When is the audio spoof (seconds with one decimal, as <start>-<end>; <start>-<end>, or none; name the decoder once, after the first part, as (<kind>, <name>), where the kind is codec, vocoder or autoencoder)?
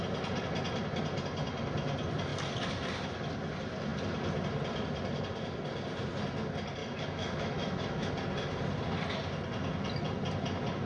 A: 6.8-8.1 (autoencoder, DAC-VAE)